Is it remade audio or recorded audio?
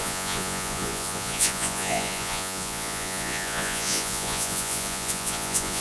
remade